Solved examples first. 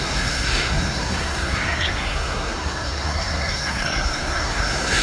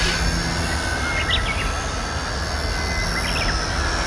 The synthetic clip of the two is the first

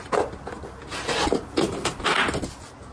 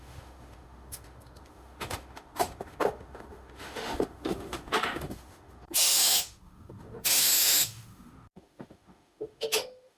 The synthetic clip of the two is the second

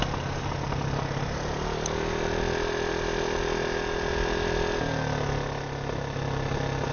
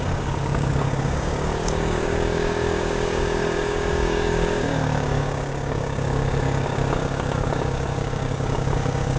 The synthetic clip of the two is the second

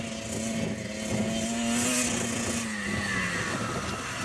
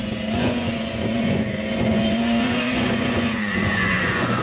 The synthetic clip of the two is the second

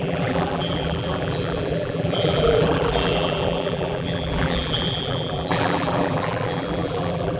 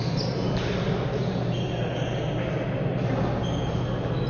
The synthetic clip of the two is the first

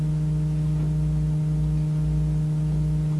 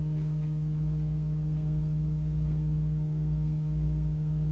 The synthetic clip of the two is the second